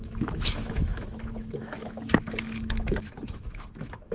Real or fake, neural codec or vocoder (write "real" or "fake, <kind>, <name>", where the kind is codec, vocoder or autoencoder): fake, autoencoder, DAC-VAE